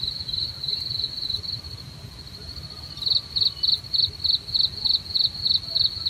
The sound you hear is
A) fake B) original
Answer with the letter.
B